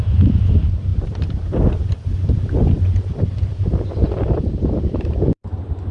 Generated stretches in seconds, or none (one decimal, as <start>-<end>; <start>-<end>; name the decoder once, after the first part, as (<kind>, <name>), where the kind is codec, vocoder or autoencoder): 0.0-5.9 (vocoder, BigVGAN v2)